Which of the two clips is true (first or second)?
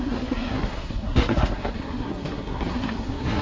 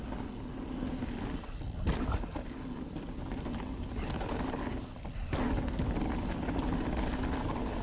second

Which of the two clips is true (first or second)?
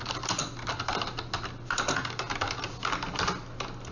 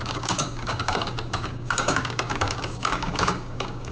first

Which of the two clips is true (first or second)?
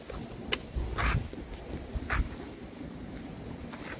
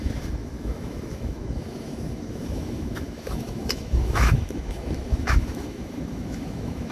first